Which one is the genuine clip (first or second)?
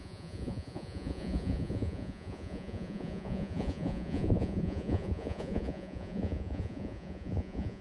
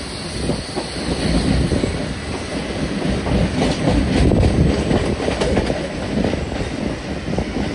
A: second